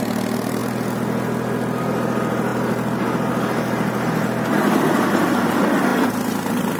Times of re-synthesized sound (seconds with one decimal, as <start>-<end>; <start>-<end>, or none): none